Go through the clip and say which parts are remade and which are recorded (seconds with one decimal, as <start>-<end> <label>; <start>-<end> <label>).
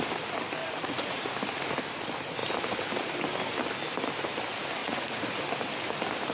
0.0-0.6 recorded; 0.6-1.4 remade; 1.4-4.8 recorded; 4.8-5.4 remade; 5.4-6.3 recorded